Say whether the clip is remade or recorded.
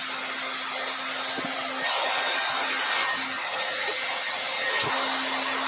recorded